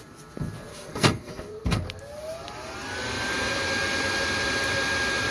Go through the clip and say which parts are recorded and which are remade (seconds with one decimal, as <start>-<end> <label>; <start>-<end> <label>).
0.0-0.7 recorded; 0.7-1.8 remade; 1.8-5.3 recorded